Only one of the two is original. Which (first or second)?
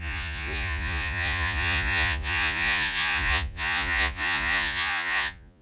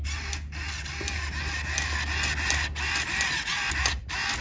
second